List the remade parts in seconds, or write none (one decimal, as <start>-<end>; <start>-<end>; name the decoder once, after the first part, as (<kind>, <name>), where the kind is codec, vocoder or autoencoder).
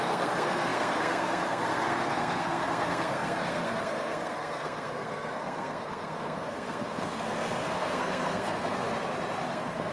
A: 0.0-8.9 (codec, SNAC); 9.5-9.9